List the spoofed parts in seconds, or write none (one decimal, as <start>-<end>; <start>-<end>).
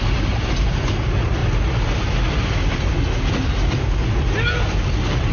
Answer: none